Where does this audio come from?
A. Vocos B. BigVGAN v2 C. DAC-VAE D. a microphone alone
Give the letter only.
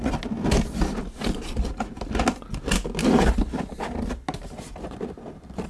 D